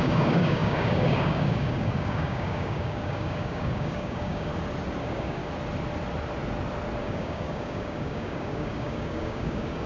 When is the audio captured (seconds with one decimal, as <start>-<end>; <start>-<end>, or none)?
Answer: 4.5-5.0; 5.4-7.0